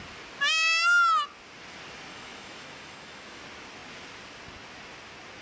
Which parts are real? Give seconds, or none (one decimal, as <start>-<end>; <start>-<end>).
0.0-2.1; 3.4-5.4